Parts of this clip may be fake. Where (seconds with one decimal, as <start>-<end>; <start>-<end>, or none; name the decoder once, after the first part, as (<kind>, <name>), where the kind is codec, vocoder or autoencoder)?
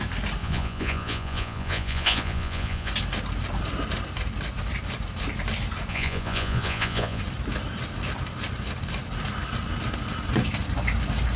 0.4-2.9 (vocoder, Vocos); 5.9-7.2